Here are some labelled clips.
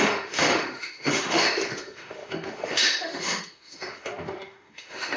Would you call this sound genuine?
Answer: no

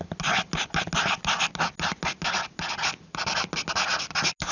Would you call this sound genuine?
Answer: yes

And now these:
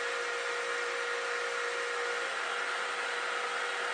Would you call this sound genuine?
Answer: yes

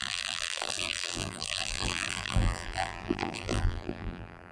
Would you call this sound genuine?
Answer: no